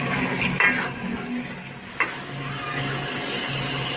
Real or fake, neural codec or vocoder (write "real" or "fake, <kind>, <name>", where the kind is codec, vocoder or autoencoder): real